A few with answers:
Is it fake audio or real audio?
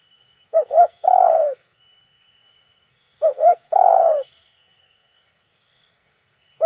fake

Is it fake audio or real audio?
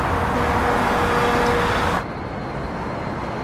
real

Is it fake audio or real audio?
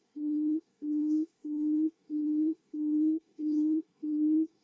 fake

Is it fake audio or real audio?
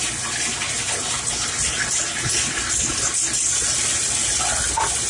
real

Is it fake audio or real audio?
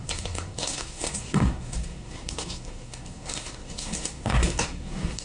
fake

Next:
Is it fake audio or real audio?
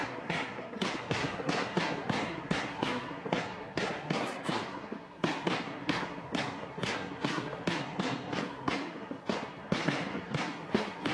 fake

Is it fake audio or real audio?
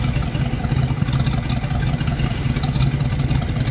real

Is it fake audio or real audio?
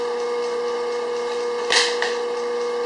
real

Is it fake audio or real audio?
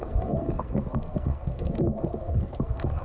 fake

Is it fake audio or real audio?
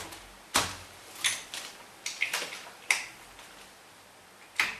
real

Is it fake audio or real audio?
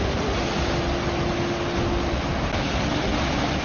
real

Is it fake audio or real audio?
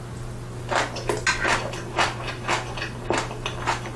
real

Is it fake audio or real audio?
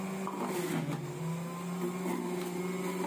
real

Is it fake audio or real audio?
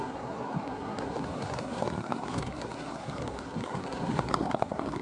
fake